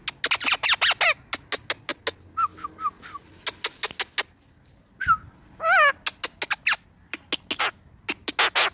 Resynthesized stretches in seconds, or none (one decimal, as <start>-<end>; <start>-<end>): none